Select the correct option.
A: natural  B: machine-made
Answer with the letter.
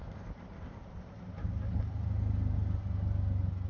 A